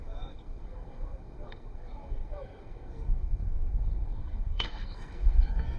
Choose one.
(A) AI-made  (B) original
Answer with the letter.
A